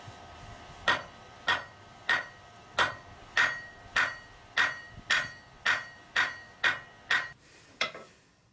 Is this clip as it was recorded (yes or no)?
no